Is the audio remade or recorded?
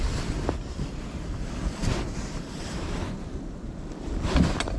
remade